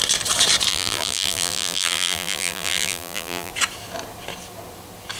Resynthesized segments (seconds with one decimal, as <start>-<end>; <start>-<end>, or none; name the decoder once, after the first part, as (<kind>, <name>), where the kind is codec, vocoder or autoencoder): 0.7-3.5 (vocoder, BigVGAN v2)

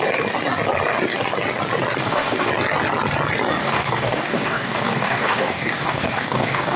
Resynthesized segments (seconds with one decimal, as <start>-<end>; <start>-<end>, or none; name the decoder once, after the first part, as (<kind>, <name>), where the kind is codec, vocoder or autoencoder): 2.0-2.5 (codec, DAC); 3.6-6.8

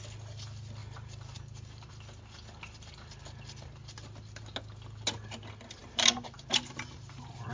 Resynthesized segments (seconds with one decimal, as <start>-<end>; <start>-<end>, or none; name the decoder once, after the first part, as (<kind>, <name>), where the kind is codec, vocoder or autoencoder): 0.8-1.9 (vocoder, BigVGAN v2)

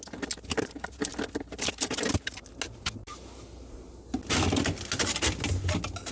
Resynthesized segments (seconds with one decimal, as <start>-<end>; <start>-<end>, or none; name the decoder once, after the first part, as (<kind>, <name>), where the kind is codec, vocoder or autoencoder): none

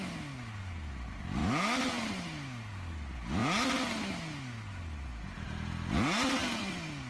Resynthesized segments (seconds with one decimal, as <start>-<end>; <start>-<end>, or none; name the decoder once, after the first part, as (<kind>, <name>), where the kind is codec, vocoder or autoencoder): none

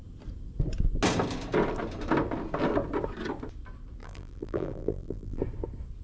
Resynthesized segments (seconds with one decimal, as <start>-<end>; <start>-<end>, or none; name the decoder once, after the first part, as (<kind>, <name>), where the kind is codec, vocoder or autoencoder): 4.0-5.4 (vocoder, BigVGAN v2)

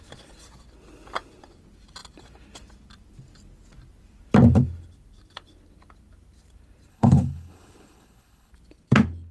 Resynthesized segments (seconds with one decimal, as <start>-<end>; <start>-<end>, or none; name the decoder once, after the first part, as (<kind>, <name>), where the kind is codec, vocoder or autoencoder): 6.9-8.5 (codec, HILCodec)